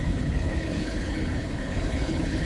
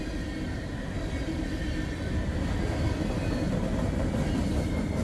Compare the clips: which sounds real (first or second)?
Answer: second